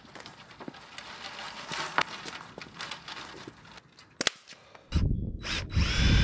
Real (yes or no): yes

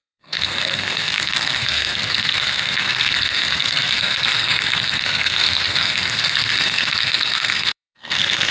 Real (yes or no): no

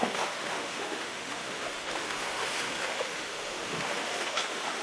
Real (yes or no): no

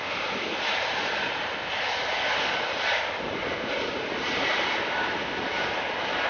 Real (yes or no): yes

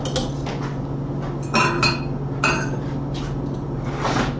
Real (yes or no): yes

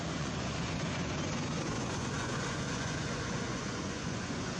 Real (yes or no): no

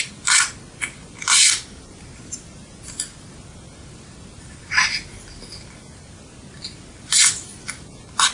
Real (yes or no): yes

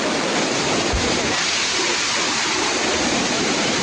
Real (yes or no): yes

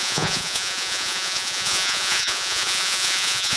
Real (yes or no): no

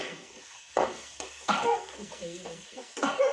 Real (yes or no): no